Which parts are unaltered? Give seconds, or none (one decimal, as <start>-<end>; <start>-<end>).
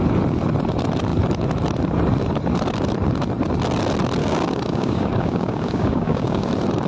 0.0-4.2; 6.5-6.9